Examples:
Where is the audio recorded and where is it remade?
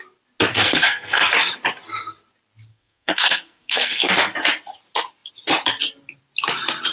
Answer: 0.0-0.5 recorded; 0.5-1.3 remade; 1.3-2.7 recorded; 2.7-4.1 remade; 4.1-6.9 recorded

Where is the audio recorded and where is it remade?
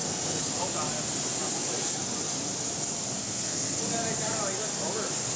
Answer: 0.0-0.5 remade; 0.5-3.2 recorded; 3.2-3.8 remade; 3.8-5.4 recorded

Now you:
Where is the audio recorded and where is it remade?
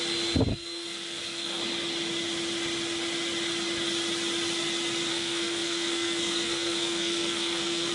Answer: 0.0-0.5 recorded; 0.5-1.6 remade; 1.6-5.1 recorded; 5.1-7.9 remade